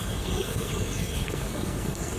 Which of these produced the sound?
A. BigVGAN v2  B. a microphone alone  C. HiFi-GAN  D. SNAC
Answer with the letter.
D